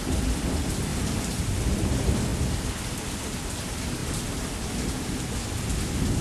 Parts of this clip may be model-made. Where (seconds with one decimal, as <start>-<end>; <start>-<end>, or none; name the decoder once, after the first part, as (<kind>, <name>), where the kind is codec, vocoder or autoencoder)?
0.9-1.4 (vocoder, BigVGAN v2); 4.0-4.7